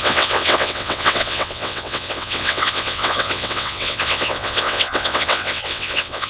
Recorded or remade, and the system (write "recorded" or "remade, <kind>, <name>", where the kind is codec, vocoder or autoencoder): remade, vocoder, WaveNeXt